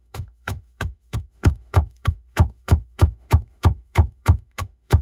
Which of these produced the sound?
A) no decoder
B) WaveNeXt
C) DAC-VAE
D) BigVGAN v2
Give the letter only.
C